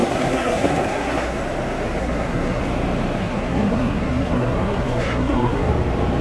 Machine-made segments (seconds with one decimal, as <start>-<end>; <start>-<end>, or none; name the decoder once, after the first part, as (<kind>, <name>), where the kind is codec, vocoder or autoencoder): 0.0-1.4 (codec, SNAC); 2.0-2.6; 3.2-5.7